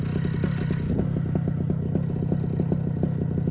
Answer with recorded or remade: recorded